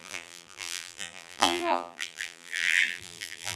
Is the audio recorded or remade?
remade